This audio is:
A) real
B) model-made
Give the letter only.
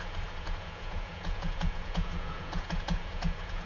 B